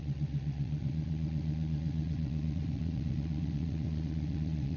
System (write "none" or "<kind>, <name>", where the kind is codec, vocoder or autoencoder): vocoder, WaveNeXt